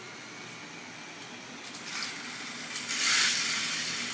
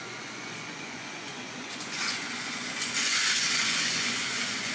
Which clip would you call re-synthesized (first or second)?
second